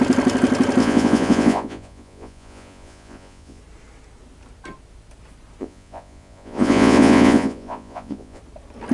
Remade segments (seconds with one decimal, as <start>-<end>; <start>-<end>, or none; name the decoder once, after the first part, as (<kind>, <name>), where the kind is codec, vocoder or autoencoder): 0.8-3.6 (vocoder, Vocos); 5.6-8.4